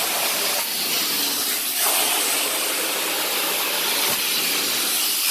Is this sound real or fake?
real